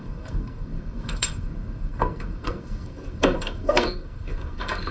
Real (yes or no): no